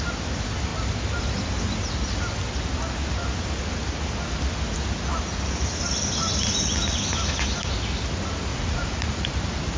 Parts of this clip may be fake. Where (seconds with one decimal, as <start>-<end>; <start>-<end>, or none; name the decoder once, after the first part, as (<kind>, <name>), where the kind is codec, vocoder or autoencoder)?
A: 8.5-9.3 (vocoder, Vocos)